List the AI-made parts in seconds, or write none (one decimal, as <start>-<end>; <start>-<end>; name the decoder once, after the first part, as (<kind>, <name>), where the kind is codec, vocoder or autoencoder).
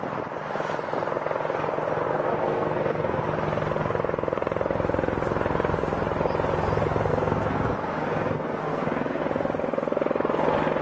2.1-3.2 (codec, SNAC); 7.1-9.2